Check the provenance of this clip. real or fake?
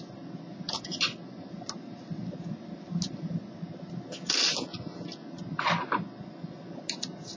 real